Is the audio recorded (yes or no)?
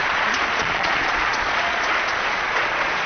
no